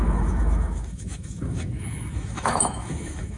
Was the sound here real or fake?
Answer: fake